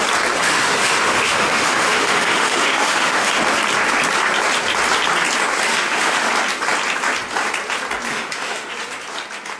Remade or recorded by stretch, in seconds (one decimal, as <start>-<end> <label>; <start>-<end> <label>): 0.0-0.4 recorded; 0.4-3.3 remade; 3.3-5.7 recorded; 5.7-6.3 remade; 6.3-8.1 recorded; 8.1-8.7 remade; 8.7-9.6 recorded